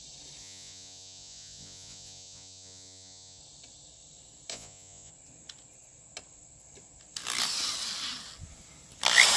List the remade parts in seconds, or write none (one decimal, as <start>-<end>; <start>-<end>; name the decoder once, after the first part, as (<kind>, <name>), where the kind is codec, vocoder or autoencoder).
0.4-3.4 (vocoder, Vocos); 4.5-5.1